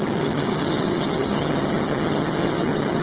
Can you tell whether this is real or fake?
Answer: fake